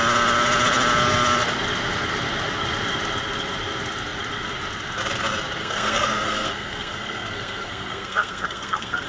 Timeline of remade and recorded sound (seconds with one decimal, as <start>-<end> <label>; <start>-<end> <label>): 0.0-5.6 recorded; 5.6-9.1 remade